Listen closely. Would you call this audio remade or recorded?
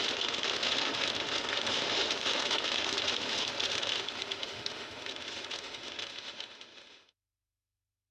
remade